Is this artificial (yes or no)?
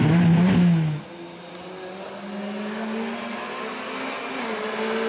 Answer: no